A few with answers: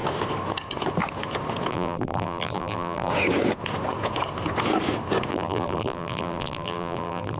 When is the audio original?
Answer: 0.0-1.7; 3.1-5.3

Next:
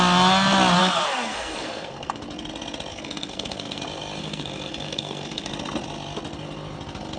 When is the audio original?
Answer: 0.0-0.8; 2.2-2.9; 3.8-4.2; 5.5-7.2

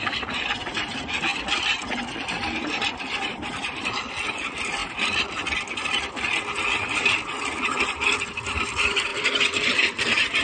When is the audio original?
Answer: 0.0-9.1; 10.0-10.4

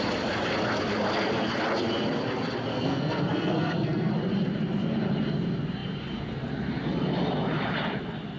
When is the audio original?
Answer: 0.0-2.7; 4.1-8.4

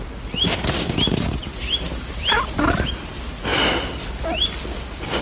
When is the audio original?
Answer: 0.0-5.2

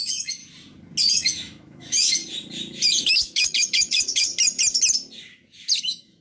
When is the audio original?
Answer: 0.4-1.1; 2.2-3.0; 4.3-5.8

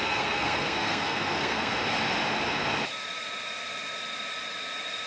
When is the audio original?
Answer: 1.7-5.1